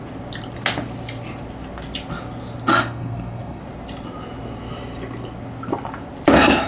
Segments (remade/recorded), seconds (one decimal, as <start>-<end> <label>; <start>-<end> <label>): 0.0-2.7 recorded; 2.7-3.6 remade; 3.6-6.7 recorded